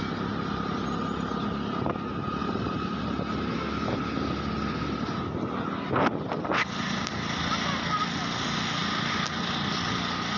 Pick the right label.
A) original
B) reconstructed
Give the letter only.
A